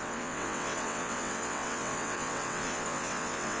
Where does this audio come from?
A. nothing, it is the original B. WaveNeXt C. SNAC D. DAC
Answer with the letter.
B